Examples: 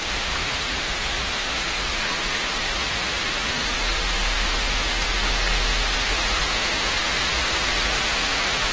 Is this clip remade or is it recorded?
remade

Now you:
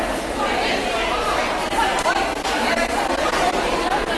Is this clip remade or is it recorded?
recorded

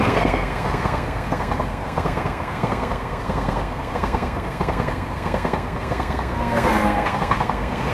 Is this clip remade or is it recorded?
remade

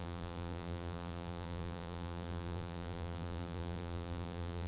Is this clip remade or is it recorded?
remade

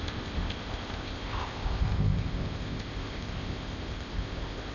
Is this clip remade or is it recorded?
remade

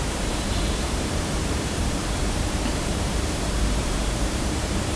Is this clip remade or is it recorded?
remade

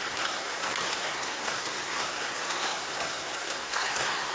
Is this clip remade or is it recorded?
remade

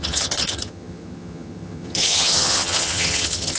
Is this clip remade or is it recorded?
remade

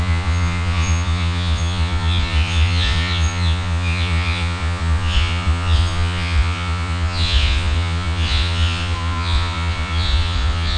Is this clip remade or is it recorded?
remade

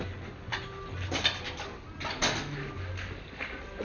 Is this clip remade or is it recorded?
recorded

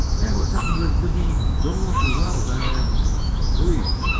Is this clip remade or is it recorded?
remade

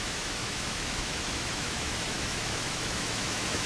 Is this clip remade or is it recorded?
remade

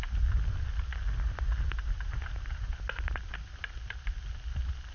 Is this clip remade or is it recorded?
recorded